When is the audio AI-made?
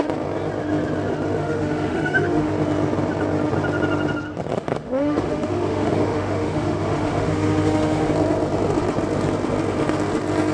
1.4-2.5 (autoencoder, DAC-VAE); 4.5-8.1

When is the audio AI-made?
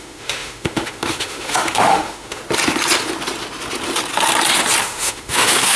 0.0-2.4 (autoencoder, DAC-VAE); 4.8-5.8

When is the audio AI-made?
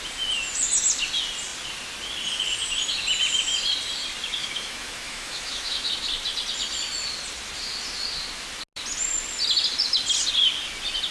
4.4-5.9 (autoencoder, DAC-VAE)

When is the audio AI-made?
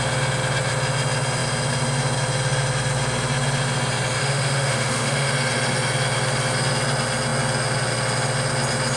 4.2-5.3 (autoencoder, DAC-VAE)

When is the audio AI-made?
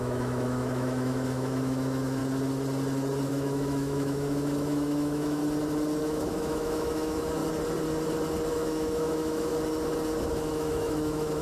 0.0-2.2 (autoencoder, DAC-VAE); 3.3-5.4; 6.0-7.4; 8.5-9.5; 10.3-11.4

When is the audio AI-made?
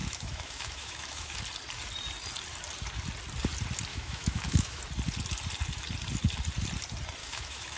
0.0-1.4 (autoencoder, DAC-VAE); 3.9-4.8; 7.2-7.8